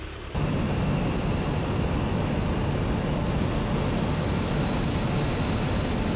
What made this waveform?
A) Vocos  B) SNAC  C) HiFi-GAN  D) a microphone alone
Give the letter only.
D